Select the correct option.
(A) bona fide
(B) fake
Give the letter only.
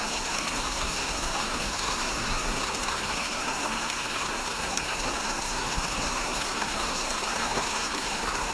B